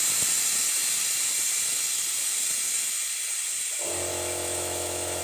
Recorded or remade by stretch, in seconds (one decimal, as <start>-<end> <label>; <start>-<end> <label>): 0.0-4.1 recorded; 4.1-5.2 remade